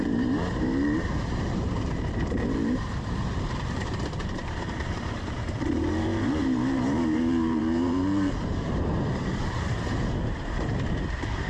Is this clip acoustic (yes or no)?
no